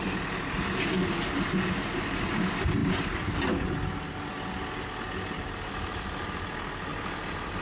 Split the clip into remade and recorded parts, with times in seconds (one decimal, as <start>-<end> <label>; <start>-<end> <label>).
0.0-7.6 recorded